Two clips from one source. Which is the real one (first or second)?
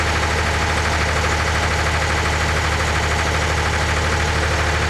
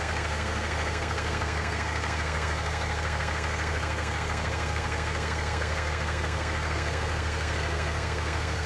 first